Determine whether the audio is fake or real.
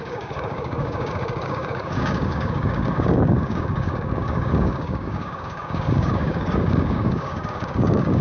fake